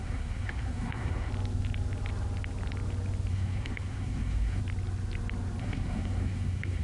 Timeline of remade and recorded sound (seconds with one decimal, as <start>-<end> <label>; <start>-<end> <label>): 0.0-1.3 remade; 1.3-3.3 recorded; 3.3-4.6 remade; 4.6-5.6 recorded; 5.6-6.8 remade